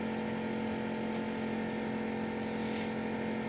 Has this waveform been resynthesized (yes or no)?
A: no